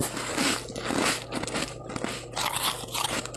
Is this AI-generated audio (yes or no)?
no